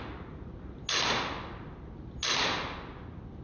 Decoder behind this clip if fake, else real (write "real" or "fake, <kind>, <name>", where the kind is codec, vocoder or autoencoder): real